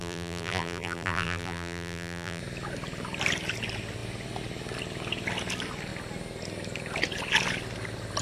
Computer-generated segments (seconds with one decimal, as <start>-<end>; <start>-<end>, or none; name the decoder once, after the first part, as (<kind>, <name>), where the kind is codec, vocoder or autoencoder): 0.0-2.4 (vocoder, BigVGAN v2)